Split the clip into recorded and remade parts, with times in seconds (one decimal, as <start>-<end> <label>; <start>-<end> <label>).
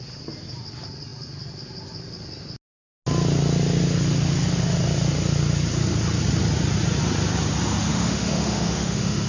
0.0-7.9 recorded; 7.9-9.3 remade